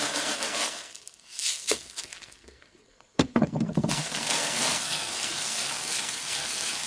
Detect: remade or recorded remade